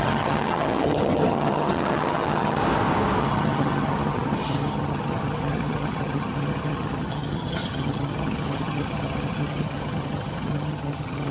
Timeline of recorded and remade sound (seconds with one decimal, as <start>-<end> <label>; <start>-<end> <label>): 0.0-2.6 remade; 2.6-3.2 recorded; 3.2-11.3 remade